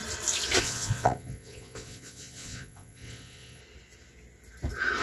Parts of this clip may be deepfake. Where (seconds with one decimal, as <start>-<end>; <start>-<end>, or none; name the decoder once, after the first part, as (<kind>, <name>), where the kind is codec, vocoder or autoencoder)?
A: 0.6-3.6 (vocoder, Vocos)